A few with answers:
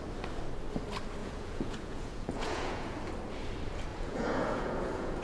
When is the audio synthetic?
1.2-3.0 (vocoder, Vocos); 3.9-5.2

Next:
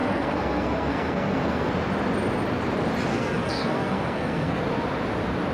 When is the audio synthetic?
0.0-1.7 (codec, SNAC); 3.1-4.6